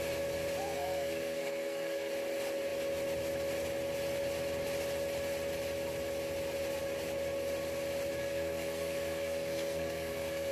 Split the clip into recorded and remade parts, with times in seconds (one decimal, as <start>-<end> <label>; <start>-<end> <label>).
0.0-0.6 recorded; 0.6-2.1 remade; 2.1-8.2 recorded; 8.2-10.5 remade